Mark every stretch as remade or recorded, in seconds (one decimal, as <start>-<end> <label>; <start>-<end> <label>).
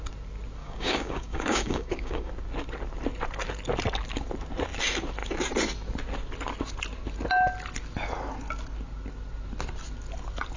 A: 0.0-0.6 recorded; 0.6-2.3 remade; 2.3-10.6 recorded